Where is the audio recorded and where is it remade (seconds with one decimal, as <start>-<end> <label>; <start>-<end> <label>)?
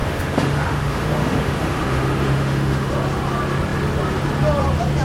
0.0-2.9 remade; 2.9-5.0 recorded